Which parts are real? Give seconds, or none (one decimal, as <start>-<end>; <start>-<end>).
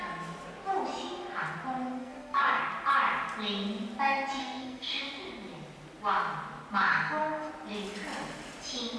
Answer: 0.0-2.0; 2.6-4.4; 5.0-6.9; 7.5-9.0